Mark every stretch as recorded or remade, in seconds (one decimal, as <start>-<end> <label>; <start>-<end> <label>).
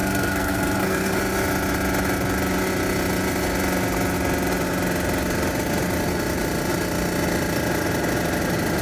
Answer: 0.0-1.2 remade; 1.2-8.8 recorded